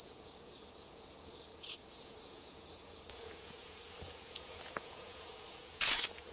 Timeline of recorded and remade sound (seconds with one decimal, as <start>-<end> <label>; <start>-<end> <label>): 0.0-6.3 remade